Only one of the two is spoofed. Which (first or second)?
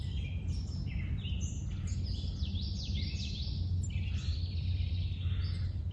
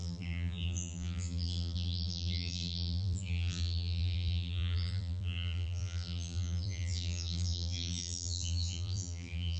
second